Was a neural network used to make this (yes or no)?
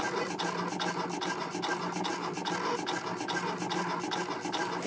no